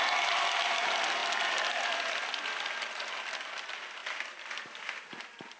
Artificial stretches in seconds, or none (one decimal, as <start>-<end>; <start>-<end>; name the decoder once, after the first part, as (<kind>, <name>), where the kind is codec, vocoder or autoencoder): none